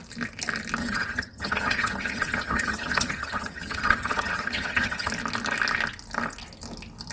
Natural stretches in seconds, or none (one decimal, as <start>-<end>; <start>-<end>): 0.0-0.8; 5.1-7.1